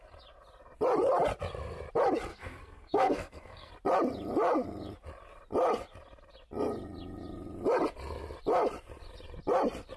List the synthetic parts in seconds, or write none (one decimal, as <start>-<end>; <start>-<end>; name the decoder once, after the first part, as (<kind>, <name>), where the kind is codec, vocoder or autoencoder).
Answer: 2.3-3.7 (codec, SNAC)